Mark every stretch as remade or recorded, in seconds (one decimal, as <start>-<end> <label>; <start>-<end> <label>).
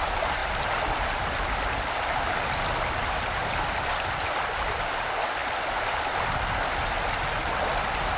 0.0-8.2 recorded